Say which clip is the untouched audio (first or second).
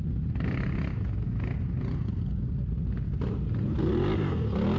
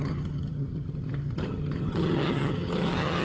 first